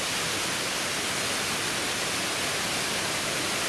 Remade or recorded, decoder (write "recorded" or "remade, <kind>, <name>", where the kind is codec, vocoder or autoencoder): recorded